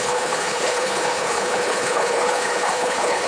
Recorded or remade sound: remade